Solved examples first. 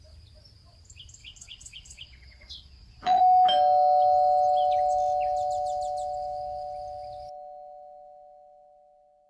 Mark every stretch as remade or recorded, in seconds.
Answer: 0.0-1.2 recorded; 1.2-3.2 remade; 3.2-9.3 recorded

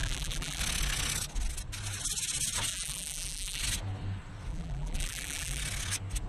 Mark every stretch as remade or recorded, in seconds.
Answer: 0.0-0.6 remade; 0.6-2.7 recorded; 2.7-3.6 remade; 3.6-4.5 recorded; 4.5-5.6 remade; 5.6-6.3 recorded

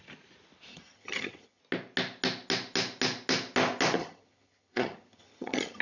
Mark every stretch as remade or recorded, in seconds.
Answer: 0.0-0.7 recorded; 0.7-1.6 remade; 1.6-4.0 recorded; 4.0-5.8 remade

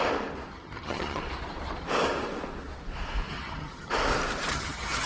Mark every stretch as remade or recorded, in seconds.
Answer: 0.0-0.5 recorded; 0.5-1.2 remade; 1.2-3.3 recorded; 3.3-3.9 remade; 3.9-4.5 recorded; 4.5-5.1 remade

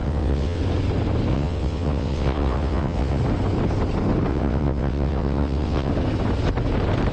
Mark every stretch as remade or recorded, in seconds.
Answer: 0.0-0.6 remade; 0.6-1.3 recorded; 1.3-3.2 remade; 3.2-4.3 recorded; 4.3-5.9 remade; 5.9-7.1 recorded